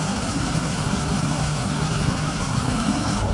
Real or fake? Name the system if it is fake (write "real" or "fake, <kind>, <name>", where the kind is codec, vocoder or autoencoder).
fake, codec, SNAC